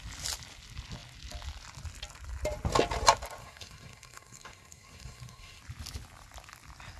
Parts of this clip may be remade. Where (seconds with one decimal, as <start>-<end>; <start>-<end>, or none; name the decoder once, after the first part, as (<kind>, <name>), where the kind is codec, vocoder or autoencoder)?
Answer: 3.4-5.6 (codec, SNAC)